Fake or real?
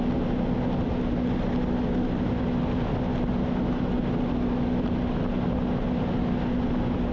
real